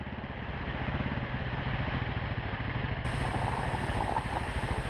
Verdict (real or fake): real